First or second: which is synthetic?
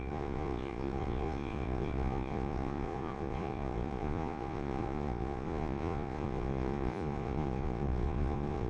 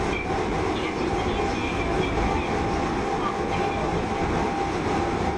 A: first